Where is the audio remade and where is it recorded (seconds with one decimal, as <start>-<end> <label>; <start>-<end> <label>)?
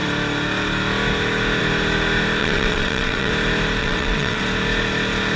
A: 0.0-2.4 recorded; 2.4-3.3 remade; 3.3-3.8 recorded; 3.8-4.4 remade; 4.4-5.4 recorded